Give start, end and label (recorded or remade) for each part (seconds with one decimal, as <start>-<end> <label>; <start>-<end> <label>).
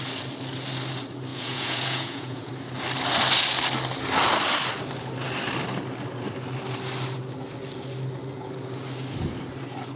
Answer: 0.0-1.3 recorded; 1.3-2.5 remade; 2.5-10.0 recorded